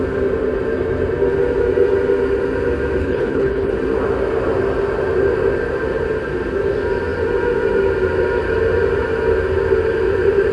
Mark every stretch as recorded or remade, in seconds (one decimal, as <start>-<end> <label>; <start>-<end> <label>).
0.0-3.0 recorded; 3.0-3.7 remade; 3.7-10.5 recorded